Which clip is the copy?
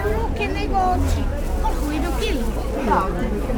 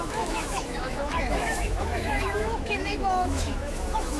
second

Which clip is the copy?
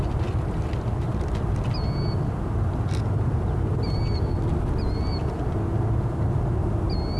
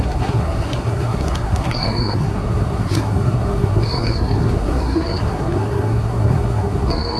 second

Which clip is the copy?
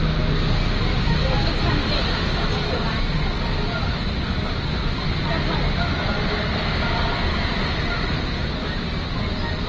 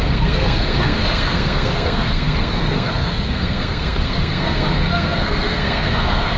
second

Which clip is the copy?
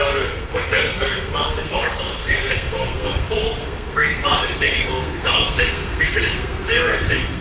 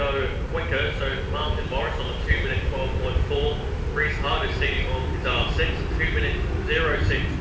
first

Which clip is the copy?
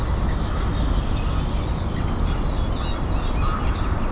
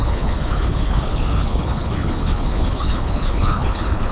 second